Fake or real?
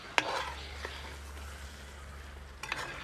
real